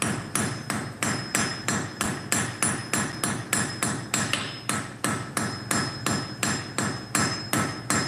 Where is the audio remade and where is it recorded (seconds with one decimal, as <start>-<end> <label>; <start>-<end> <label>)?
0.0-8.1 recorded